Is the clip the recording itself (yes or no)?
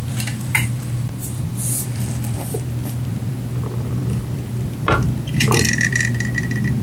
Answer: no